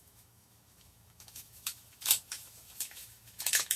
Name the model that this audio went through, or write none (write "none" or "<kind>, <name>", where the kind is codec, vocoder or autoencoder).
autoencoder, DAC-VAE